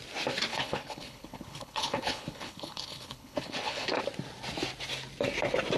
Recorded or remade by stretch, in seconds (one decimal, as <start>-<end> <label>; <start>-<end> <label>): 0.0-0.5 recorded; 0.5-4.0 remade; 4.0-5.8 recorded

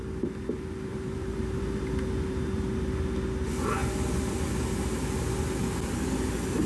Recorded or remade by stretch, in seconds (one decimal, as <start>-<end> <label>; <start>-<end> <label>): 0.0-0.9 recorded; 0.9-1.8 remade; 1.8-6.7 recorded

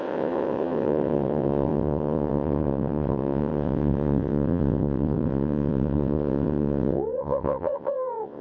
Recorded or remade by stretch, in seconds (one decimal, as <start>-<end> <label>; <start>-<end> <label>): 0.0-8.4 remade

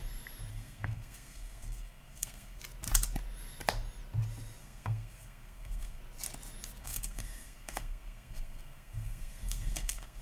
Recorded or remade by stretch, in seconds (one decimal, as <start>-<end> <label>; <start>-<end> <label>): 0.0-0.5 recorded; 0.5-2.6 remade; 2.6-4.6 recorded; 4.6-6.0 remade; 6.0-6.8 recorded; 6.8-10.2 remade

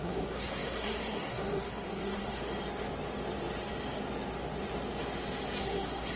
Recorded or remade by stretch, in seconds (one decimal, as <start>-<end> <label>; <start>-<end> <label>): 0.0-2.4 remade; 2.4-5.6 recorded; 5.6-6.2 remade

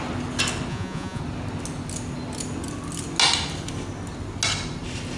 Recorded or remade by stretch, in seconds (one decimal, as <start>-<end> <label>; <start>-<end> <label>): 0.0-0.7 recorded; 0.7-1.2 remade; 1.2-5.2 recorded